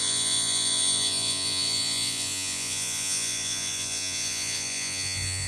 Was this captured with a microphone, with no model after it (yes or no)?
no